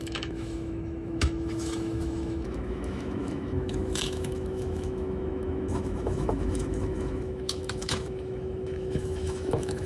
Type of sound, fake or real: fake